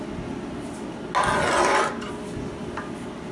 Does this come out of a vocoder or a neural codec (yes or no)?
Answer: no